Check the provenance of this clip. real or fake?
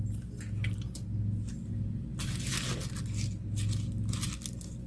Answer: real